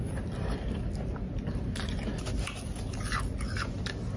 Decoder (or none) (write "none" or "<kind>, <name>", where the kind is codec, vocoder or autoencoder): none